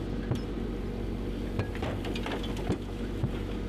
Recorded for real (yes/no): yes